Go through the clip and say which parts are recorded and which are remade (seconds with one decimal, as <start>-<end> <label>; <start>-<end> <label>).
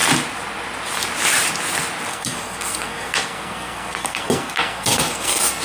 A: 0.0-2.1 recorded; 2.1-5.6 remade